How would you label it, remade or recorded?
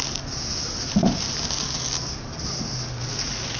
recorded